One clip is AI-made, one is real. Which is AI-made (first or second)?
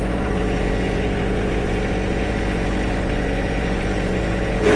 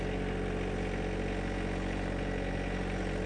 first